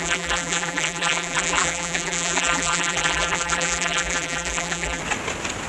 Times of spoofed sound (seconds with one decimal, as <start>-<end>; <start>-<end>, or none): 0.0-5.0